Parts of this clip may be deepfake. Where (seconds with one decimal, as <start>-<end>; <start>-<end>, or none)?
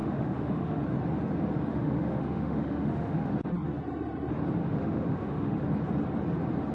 0.0-0.8; 1.7-3.3; 4.6-5.6